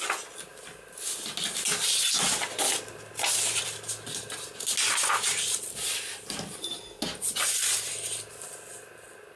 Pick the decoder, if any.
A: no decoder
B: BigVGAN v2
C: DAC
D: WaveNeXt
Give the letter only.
A